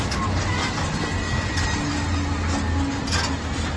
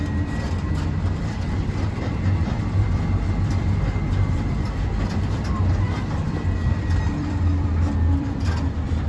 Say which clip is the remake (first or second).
second